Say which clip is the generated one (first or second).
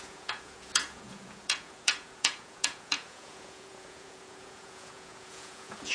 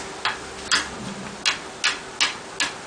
first